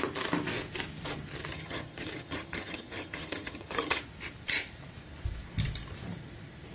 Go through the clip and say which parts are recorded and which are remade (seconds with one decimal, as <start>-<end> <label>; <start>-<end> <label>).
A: 0.0-1.5 recorded; 1.5-4.0 remade; 4.0-6.7 recorded